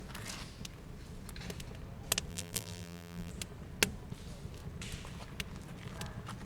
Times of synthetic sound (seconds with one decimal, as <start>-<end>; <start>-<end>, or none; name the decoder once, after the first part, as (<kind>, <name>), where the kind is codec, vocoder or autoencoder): 2.3-3.3 (vocoder, BigVGAN v2)